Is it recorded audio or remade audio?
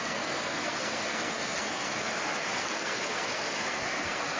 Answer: remade